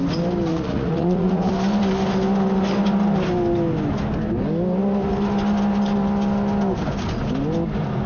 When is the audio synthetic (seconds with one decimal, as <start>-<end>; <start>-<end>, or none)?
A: 0.5-1.5